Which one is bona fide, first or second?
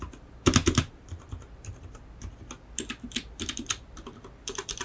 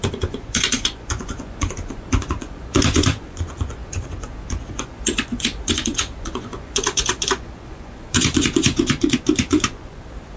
first